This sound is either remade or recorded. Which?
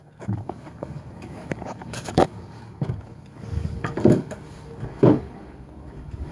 remade